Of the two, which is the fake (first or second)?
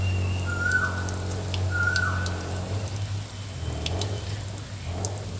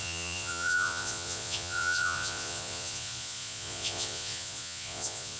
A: second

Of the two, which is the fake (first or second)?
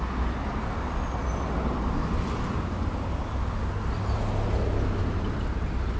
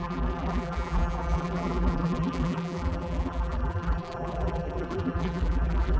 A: second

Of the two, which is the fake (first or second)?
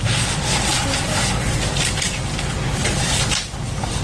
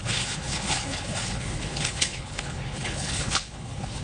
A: second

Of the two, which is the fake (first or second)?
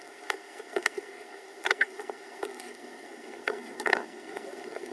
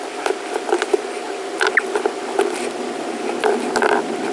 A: first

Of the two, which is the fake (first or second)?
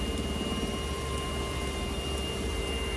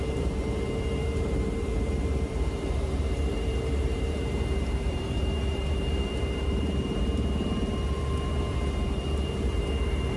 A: second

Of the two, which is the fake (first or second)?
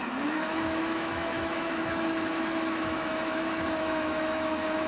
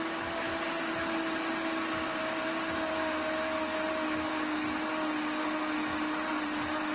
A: first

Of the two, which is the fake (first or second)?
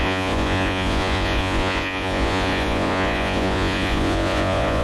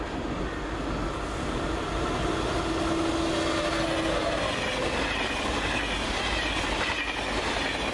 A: first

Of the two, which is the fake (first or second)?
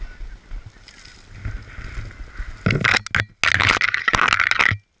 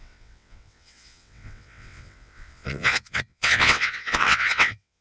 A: second